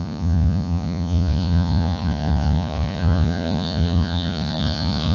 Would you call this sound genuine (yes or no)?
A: no